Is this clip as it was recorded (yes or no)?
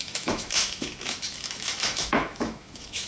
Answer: no